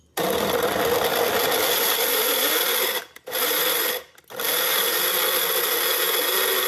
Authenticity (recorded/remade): recorded